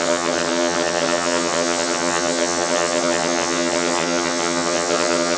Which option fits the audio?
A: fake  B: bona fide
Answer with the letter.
A